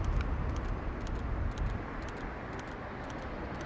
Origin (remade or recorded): recorded